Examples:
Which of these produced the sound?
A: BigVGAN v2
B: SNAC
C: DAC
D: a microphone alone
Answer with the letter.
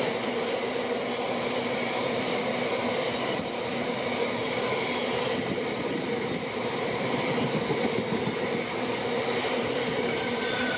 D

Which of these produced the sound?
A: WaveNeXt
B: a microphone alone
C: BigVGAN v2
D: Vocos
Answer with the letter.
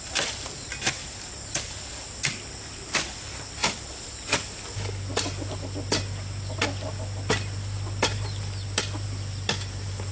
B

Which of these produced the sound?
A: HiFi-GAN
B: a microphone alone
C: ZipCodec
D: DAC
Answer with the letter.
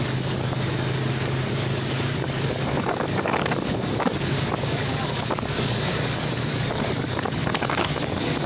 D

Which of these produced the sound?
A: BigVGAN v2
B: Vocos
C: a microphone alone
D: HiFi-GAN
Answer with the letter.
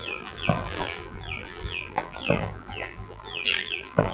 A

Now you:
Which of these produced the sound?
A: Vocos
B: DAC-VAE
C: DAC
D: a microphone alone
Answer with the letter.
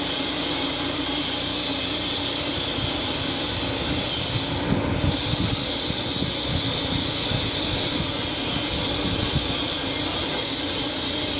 D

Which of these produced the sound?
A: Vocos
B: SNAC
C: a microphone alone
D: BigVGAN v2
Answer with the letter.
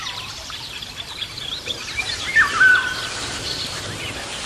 D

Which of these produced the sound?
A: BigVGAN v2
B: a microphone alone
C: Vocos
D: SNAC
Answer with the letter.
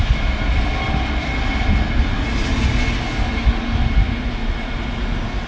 B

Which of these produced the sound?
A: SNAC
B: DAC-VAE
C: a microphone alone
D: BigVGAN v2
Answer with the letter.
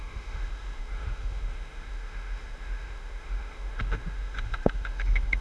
B